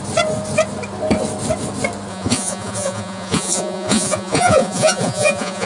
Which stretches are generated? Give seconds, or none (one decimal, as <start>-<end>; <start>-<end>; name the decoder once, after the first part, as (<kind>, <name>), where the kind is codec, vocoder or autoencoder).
2.1-5.7 (vocoder, Vocos)